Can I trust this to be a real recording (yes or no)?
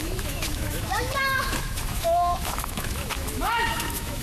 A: no